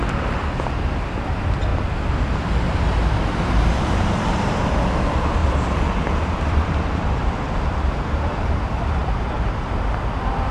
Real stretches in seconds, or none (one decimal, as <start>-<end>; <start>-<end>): 0.0-1.7; 4.7-5.4; 8.6-9.0; 9.6-10.5